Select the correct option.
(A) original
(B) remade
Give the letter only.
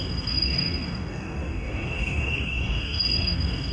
B